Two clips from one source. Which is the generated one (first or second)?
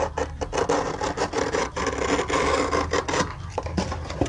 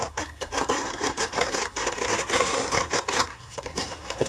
second